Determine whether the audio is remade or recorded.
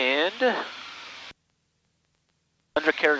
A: recorded